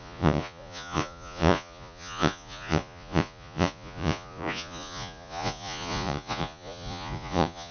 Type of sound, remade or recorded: remade